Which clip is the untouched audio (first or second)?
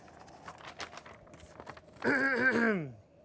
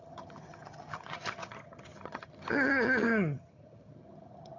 first